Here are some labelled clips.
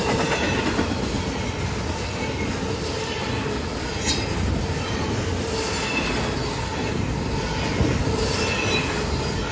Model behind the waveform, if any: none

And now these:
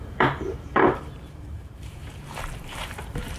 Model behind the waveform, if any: vocoder, BigVGAN v2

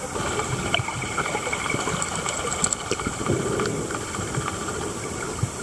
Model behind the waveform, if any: vocoder, BigVGAN v2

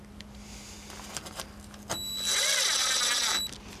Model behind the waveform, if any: none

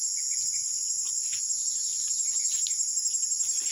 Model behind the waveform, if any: none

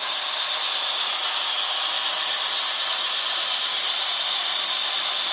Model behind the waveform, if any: vocoder, BigVGAN v2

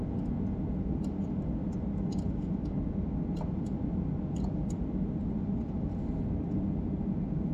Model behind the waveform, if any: none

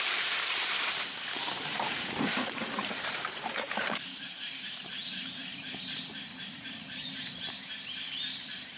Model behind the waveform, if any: vocoder, BigVGAN v2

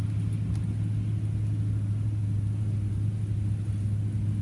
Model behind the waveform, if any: none